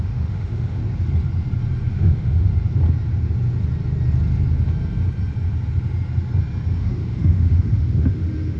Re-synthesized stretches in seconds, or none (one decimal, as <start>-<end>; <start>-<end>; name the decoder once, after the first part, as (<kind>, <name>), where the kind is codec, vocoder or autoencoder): 0.0-0.8 (autoencoder, DAC-VAE); 1.9-2.5; 6.8-8.6